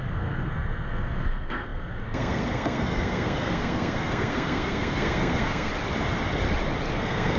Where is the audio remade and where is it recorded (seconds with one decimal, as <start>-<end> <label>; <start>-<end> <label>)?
0.0-5.7 remade; 5.7-6.9 recorded; 6.9-7.4 remade